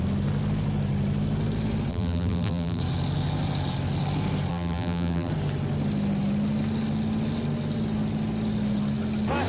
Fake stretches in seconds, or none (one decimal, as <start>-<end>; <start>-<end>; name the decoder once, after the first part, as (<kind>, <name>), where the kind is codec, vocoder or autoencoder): 1.9-2.8 (vocoder, BigVGAN v2); 4.5-5.3